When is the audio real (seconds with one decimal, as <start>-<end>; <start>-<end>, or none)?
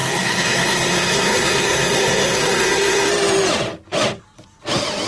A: 3.1-5.1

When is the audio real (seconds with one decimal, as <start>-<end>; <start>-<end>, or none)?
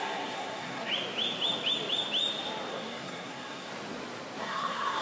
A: 0.9-2.7; 3.7-4.4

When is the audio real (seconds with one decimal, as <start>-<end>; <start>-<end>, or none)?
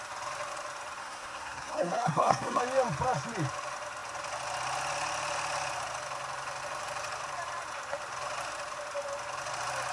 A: 0.0-1.0; 2.6-9.9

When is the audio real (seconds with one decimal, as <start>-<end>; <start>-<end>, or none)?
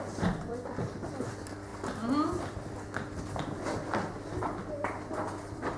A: 0.0-5.8